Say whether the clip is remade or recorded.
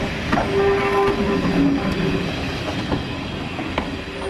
recorded